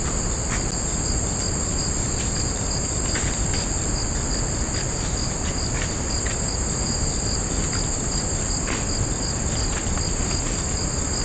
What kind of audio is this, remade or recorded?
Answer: recorded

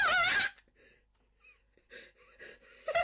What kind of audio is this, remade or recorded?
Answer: recorded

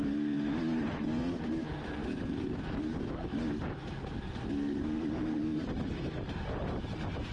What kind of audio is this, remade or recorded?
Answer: recorded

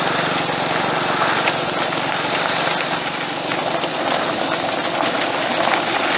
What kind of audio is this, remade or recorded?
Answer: recorded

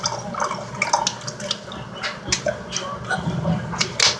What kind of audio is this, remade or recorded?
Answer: recorded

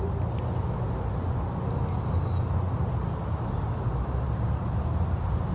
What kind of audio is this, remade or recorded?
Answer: recorded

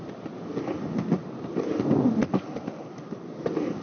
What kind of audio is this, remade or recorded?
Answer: recorded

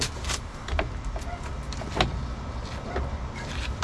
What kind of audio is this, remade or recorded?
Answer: remade